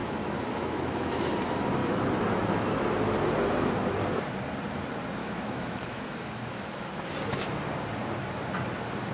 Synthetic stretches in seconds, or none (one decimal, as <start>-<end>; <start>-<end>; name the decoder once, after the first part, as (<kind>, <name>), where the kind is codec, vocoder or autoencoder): 0.0-1.3 (autoencoder, DAC-VAE); 1.8-2.9; 5.2-6.9